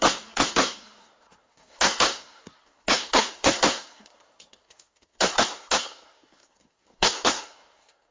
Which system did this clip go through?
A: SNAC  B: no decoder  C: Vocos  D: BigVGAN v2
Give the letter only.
A